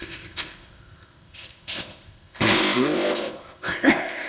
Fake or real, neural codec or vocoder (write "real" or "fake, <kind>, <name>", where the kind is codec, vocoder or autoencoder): fake, codec, ZipCodec